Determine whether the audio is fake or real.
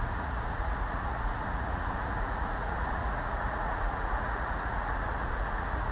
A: fake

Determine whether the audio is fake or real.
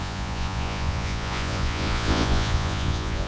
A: fake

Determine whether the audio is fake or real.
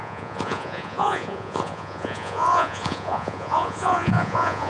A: fake